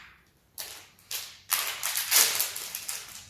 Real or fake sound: real